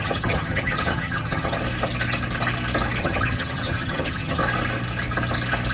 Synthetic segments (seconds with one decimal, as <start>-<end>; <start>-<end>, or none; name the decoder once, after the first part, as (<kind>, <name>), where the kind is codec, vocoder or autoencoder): 0.0-1.6 (vocoder, HiFi-GAN); 3.0-4.4